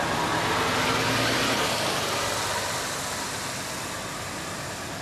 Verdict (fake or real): real